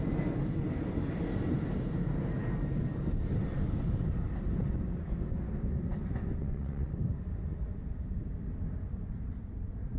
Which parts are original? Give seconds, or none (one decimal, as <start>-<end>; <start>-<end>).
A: 0.0-6.4; 6.9-10.0